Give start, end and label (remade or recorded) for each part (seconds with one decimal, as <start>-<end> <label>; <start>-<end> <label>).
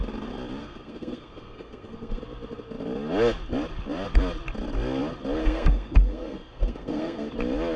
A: 0.0-0.6 recorded; 0.6-2.2 remade; 2.2-5.4 recorded; 5.4-7.3 remade; 7.3-7.8 recorded